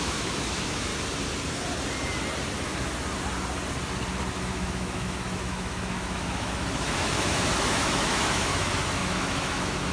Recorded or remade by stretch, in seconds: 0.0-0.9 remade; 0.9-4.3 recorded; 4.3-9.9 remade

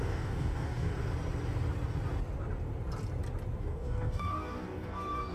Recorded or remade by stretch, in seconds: 0.0-0.9 remade; 0.9-3.6 recorded; 3.6-5.3 remade